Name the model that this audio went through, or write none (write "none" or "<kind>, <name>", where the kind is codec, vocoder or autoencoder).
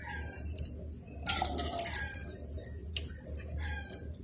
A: none